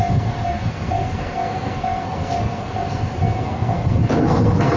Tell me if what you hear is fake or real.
fake